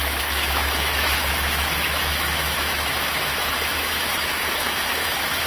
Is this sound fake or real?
fake